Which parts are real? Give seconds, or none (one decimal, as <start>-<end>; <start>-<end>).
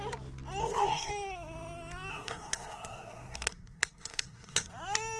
0.0-0.6; 1.1-2.1; 4.7-5.2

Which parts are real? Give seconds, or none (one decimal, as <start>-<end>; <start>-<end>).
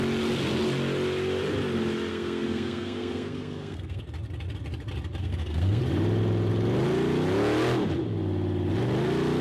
0.0-2.1; 4.0-5.2; 5.8-9.4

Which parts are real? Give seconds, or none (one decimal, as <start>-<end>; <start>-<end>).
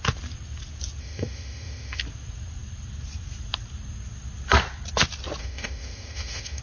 0.0-1.0; 2.0-5.4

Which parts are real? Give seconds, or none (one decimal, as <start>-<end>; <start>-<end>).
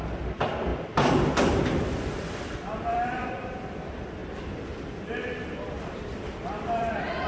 0.7-2.3; 4.2-5.7